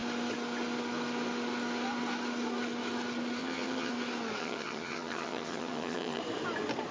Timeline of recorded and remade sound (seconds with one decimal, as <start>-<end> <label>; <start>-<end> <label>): 0.0-3.4 recorded; 3.4-3.9 remade; 3.9-4.4 recorded; 4.4-6.2 remade; 6.2-6.9 recorded